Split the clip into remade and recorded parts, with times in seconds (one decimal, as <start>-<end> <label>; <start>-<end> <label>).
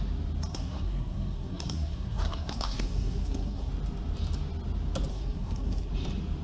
0.0-0.5 recorded; 0.5-3.7 remade; 3.7-5.1 recorded; 5.1-5.9 remade; 5.9-6.4 recorded